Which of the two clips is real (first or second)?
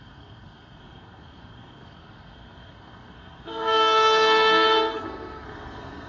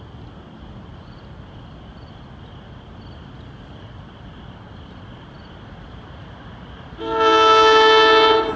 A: second